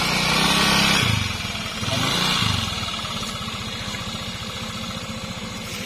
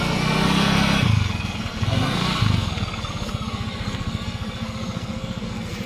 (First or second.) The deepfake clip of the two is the second